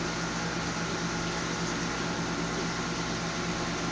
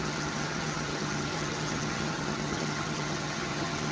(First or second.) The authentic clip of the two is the first